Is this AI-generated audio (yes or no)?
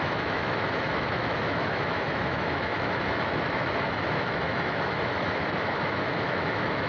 yes